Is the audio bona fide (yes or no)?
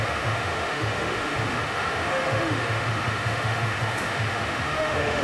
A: no